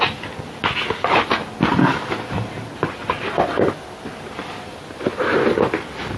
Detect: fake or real real